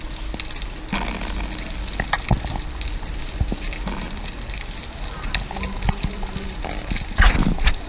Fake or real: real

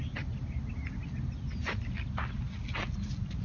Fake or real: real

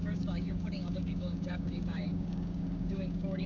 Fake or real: fake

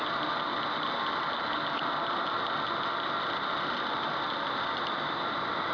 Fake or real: real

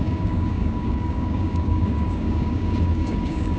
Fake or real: fake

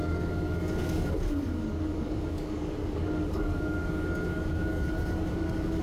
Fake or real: fake